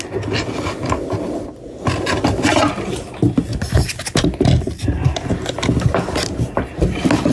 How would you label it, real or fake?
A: real